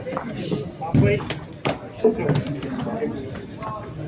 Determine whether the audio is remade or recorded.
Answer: recorded